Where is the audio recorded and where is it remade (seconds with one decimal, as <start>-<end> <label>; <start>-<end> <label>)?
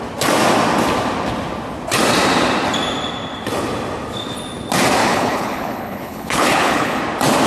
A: 0.0-5.0 recorded; 5.0-7.0 remade; 7.0-7.5 recorded